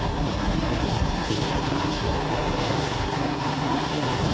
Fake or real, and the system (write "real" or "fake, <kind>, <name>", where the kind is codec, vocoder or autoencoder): fake, codec, SNAC